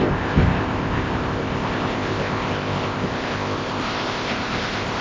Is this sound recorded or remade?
remade